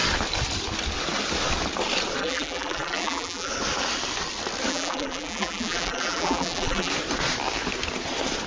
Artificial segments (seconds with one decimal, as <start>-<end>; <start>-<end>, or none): 2.2-3.5; 4.7-6.9